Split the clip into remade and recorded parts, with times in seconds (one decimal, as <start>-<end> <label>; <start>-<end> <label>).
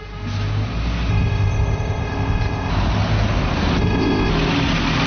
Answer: 0.0-1.1 recorded; 1.1-2.7 remade; 2.7-3.8 recorded; 3.8-4.3 remade; 4.3-5.1 recorded